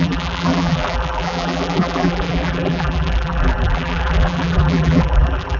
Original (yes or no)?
no